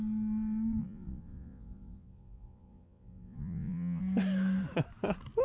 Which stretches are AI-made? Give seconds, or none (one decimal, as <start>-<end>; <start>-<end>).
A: 0.8-4.0